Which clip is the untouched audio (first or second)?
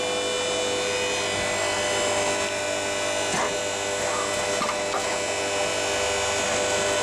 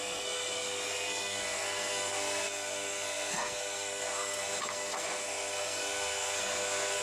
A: first